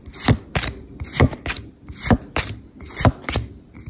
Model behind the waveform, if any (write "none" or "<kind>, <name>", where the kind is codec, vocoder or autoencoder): none